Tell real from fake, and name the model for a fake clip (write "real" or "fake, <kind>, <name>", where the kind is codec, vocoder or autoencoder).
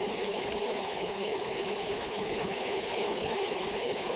fake, codec, HILCodec